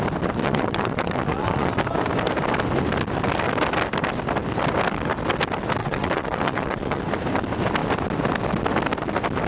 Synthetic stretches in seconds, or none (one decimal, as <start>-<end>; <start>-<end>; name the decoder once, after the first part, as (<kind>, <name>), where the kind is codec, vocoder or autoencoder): 0.4-1.7 (vocoder, WaveNeXt); 5.8-7.0